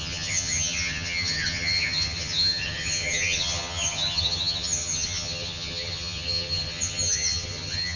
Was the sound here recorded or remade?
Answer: remade